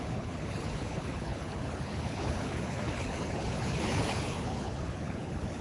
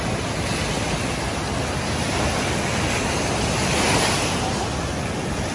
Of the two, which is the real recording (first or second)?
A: second